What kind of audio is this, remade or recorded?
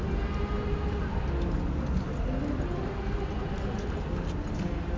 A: recorded